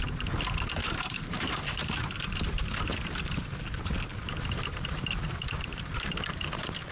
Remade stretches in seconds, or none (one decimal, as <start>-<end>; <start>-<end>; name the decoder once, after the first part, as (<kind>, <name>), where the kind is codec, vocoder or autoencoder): 0.8-2.9 (vocoder, BigVGAN v2); 4.1-4.9